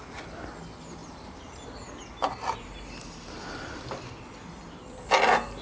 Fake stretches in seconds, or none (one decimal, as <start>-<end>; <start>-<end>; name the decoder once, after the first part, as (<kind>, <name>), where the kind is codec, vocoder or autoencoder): none